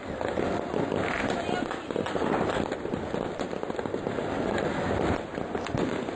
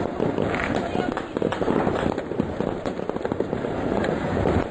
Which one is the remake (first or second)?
second